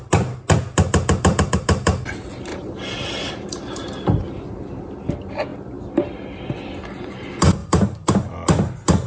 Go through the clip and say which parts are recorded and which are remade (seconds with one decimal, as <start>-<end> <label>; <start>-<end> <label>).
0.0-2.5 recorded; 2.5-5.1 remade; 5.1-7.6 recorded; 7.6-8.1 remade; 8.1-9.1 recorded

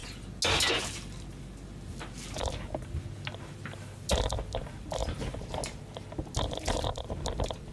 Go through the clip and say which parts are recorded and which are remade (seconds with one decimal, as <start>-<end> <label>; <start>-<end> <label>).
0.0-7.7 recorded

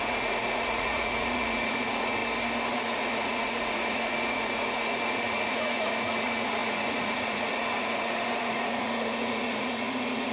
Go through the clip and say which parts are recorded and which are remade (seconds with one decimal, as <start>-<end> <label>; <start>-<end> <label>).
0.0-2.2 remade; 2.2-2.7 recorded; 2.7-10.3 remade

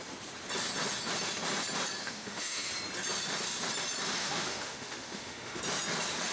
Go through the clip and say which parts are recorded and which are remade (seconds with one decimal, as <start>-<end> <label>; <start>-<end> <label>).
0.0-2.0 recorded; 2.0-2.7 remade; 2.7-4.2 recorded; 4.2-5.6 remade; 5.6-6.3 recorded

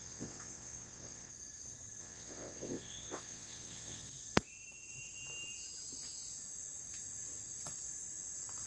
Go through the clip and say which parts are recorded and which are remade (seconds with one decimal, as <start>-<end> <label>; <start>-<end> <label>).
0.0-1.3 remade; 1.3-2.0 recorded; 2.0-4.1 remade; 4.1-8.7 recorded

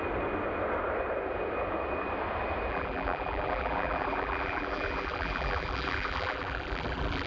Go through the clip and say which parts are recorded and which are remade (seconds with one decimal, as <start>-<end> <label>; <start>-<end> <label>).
0.0-2.7 recorded; 2.7-7.3 remade

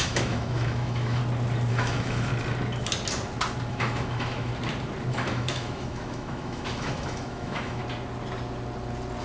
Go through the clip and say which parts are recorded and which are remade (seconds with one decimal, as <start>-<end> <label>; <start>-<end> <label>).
0.0-1.2 remade; 1.2-1.7 recorded; 1.7-2.3 remade; 2.3-3.7 recorded; 3.7-4.5 remade; 4.5-5.1 recorded; 5.1-7.8 remade; 7.8-9.2 recorded